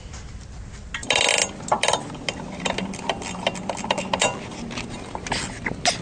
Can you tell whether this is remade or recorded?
recorded